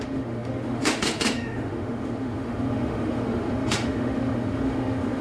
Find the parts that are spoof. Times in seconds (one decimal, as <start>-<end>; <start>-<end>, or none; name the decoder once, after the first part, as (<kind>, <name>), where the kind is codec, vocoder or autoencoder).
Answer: 0.0-5.2 (autoencoder, DAC-VAE)